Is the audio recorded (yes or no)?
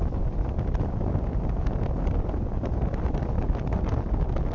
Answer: yes